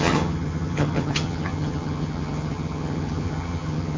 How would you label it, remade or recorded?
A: remade